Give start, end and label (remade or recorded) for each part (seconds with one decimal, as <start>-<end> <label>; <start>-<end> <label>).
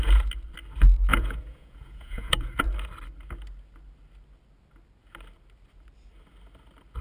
0.0-1.1 recorded; 1.1-2.6 remade; 2.6-7.0 recorded